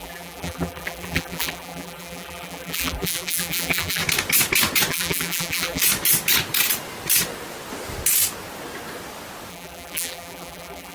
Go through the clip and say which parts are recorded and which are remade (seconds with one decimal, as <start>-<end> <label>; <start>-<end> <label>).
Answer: 0.0-4.0 remade; 4.0-4.9 recorded; 4.9-5.8 remade; 5.8-9.5 recorded; 9.5-10.9 remade